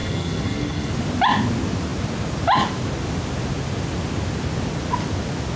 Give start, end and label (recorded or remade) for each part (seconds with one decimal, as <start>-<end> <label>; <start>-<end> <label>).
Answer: 0.0-0.9 remade; 0.9-5.6 recorded